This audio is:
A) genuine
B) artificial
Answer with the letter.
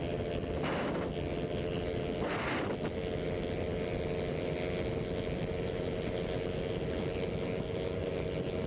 A